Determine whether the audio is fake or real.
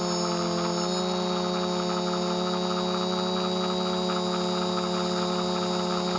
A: real